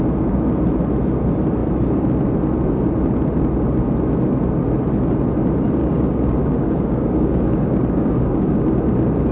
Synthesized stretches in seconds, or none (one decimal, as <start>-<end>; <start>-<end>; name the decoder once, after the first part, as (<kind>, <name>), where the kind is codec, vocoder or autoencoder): 5.8-8.6 (codec, DAC)